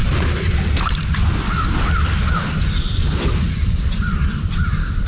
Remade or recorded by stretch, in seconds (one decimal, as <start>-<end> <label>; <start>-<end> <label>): 0.0-5.1 recorded